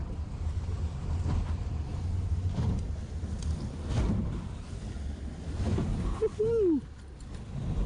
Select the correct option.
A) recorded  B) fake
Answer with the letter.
A